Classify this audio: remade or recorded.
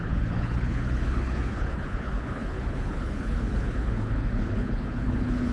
remade